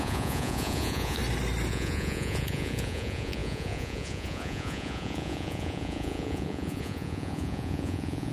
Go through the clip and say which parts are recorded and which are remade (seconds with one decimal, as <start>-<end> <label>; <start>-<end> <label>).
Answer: 0.0-1.2 remade; 1.2-1.7 recorded; 1.7-8.3 remade